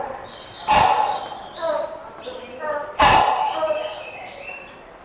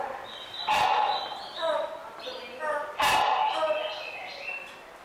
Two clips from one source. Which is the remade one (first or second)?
first